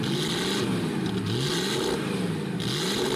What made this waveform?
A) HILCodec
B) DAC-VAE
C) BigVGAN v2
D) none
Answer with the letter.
D